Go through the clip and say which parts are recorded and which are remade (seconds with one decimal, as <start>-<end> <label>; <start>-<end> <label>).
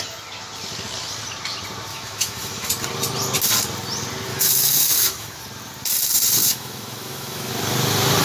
0.0-1.9 recorded; 1.9-2.7 remade; 2.7-4.3 recorded; 4.3-5.4 remade; 5.4-6.4 recorded; 6.4-7.5 remade; 7.5-8.2 recorded